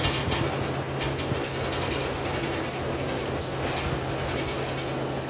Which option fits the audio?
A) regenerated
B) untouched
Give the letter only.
B